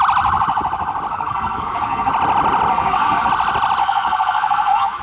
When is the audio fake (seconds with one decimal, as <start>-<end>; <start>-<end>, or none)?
1.1-2.1; 2.7-3.3; 3.8-5.0